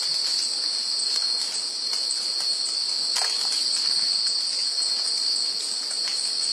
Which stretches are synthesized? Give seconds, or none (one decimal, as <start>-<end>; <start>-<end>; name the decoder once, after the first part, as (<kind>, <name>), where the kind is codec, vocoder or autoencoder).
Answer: none